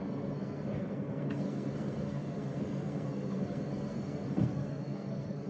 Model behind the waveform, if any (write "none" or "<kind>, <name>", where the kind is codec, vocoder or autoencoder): codec, SNAC